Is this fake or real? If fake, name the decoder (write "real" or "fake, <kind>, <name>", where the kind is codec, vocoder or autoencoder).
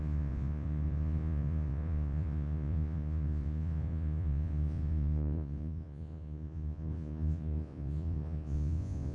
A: fake, vocoder, Vocos